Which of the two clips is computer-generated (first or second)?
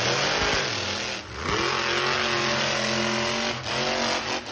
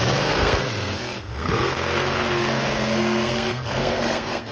second